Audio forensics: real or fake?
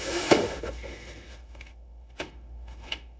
fake